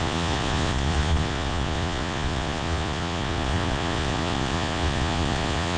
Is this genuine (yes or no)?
no